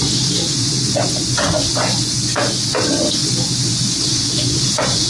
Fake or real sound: fake